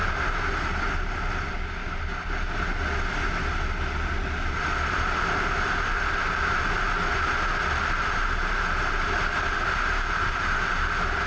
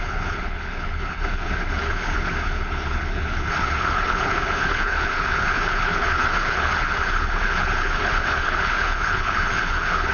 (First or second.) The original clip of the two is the first